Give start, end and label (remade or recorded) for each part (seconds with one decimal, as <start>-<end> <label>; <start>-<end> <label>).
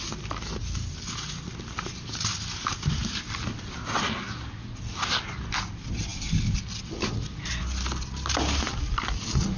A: 0.0-9.6 recorded